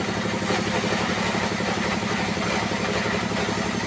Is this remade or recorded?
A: recorded